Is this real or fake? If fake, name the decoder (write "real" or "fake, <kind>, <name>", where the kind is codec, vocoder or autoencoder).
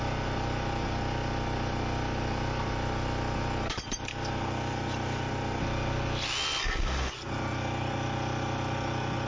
real